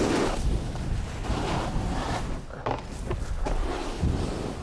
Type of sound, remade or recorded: recorded